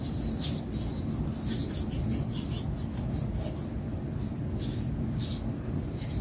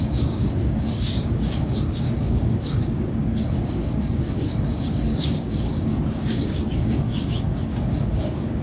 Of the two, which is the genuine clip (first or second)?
first